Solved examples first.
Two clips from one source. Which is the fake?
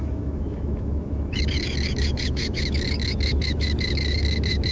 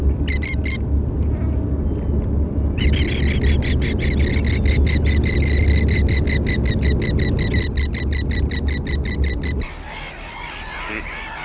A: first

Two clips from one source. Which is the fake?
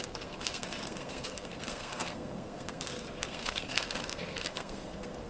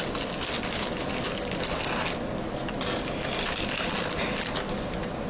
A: first